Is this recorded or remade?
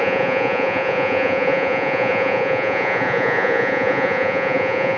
remade